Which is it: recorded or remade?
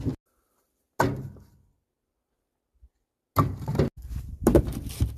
recorded